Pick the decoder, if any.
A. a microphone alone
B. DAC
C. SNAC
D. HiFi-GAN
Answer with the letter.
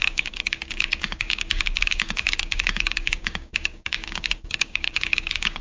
B